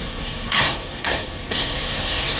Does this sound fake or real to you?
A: fake